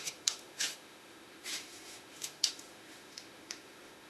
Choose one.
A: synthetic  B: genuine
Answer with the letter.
A